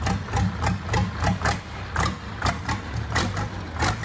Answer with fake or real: real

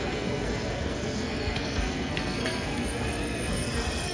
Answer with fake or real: fake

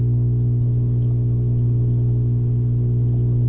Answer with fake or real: real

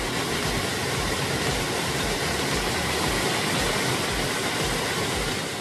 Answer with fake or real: real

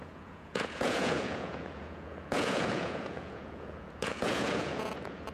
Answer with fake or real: fake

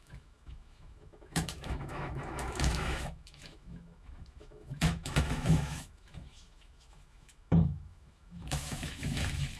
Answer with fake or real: fake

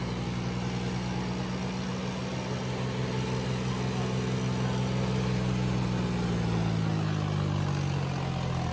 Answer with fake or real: real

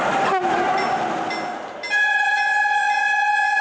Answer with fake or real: real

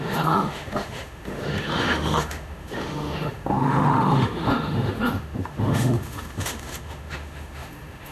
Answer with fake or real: fake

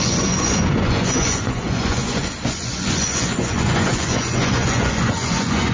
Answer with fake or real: fake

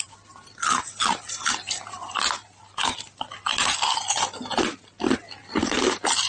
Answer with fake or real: real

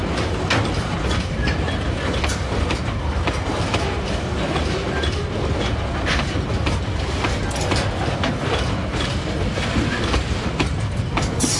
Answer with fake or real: real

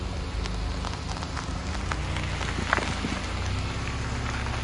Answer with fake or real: real